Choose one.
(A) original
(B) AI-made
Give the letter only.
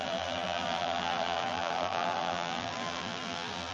B